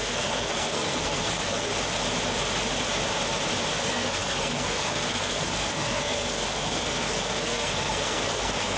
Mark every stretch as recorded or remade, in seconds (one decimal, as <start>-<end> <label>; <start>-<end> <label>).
0.0-1.7 remade; 1.7-3.7 recorded; 3.7-8.8 remade